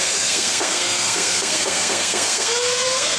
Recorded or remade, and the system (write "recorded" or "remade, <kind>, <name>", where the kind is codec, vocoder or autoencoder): remade, codec, SNAC